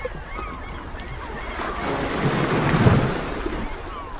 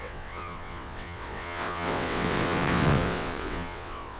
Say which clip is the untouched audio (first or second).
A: first